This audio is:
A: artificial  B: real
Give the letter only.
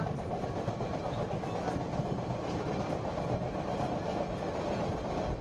B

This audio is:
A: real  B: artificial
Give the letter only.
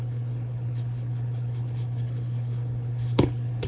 B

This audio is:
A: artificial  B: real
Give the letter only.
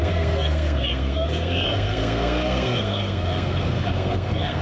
A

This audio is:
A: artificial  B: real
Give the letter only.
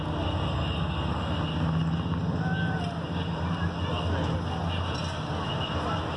B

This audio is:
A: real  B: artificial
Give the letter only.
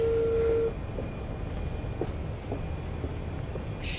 A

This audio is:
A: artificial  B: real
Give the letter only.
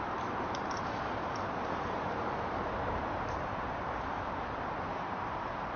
A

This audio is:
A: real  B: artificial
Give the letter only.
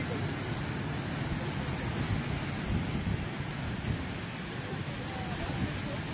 A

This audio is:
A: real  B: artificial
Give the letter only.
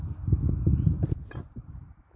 A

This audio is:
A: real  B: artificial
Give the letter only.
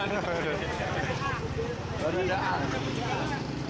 A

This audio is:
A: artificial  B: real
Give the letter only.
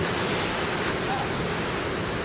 B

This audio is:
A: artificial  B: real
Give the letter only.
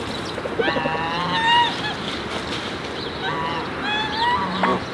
B